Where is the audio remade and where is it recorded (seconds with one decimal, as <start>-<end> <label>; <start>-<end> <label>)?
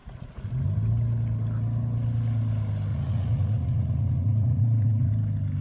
0.0-0.5 remade; 0.5-2.9 recorded; 2.9-5.1 remade; 5.1-5.6 recorded